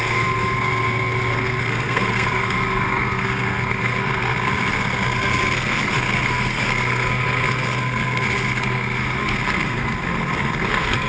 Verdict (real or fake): fake